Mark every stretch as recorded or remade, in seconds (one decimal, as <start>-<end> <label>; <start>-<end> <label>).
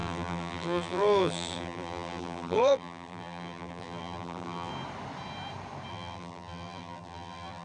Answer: 0.0-4.7 remade; 4.7-5.9 recorded; 5.9-7.6 remade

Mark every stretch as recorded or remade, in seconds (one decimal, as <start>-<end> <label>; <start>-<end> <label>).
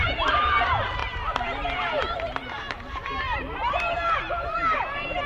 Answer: 0.0-5.3 remade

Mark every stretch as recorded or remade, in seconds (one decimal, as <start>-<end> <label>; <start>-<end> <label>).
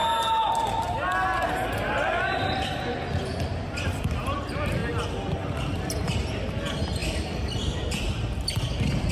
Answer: 0.0-3.2 recorded; 3.2-4.8 remade; 4.8-5.7 recorded; 5.7-9.1 remade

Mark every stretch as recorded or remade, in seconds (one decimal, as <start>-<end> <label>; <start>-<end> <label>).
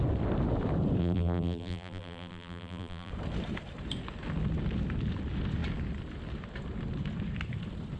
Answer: 0.0-1.0 recorded; 1.0-3.1 remade; 3.1-8.0 recorded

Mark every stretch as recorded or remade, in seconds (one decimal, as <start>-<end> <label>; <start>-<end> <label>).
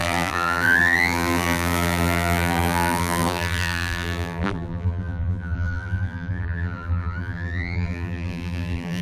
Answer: 0.0-9.0 remade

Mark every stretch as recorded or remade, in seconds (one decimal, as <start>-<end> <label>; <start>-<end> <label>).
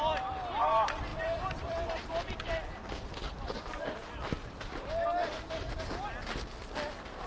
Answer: 0.0-1.1 recorded; 1.1-4.9 remade; 4.9-7.3 recorded